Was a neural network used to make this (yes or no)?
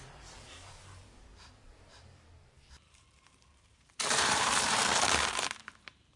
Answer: yes